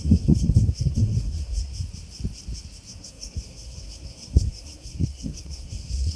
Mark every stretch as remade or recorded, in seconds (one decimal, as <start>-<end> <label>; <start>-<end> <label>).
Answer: 0.0-1.7 remade; 1.7-2.9 recorded; 2.9-6.2 remade